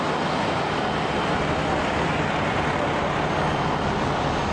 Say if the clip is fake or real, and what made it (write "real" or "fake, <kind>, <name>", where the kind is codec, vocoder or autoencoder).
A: real